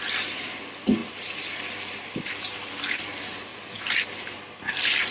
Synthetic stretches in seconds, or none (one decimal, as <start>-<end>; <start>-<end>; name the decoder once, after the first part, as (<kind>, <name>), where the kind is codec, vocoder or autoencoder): none